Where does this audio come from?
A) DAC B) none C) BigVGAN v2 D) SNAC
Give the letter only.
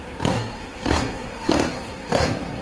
D